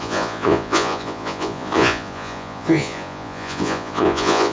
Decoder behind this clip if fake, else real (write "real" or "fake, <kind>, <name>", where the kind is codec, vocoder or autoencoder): fake, vocoder, Vocos